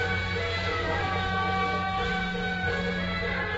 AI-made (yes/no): no